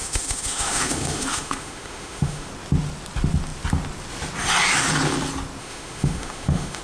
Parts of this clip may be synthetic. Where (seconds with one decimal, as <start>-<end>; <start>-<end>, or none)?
0.0-2.5; 5.6-6.8